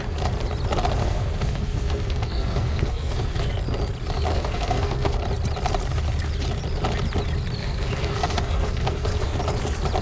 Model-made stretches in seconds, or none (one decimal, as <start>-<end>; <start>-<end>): 1.0-3.5; 4.3-5.2; 7.6-9.4

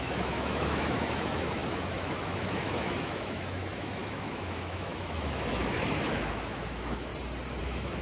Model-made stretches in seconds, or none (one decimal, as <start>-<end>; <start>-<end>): 0.0-7.1; 7.6-8.0

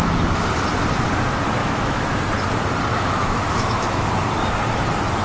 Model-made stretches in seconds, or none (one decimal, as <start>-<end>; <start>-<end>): 1.6-2.2; 2.9-4.1

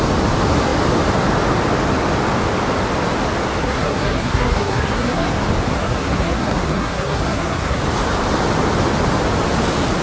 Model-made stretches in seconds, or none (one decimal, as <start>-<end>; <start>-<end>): 3.6-5.3; 5.7-7.8

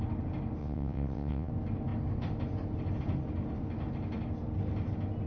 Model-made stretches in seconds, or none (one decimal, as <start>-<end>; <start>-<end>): 0.6-1.5

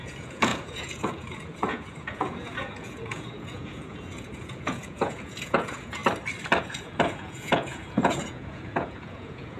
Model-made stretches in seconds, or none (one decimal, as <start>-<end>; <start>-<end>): 0.0-6.0; 6.6-9.6